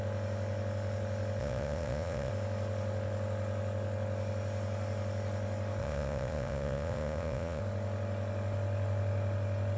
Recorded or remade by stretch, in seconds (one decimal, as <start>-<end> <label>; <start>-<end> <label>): 0.0-1.4 recorded; 1.4-2.3 remade; 2.3-5.8 recorded; 5.8-7.6 remade; 7.6-9.8 recorded